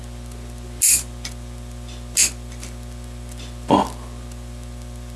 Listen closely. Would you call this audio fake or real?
real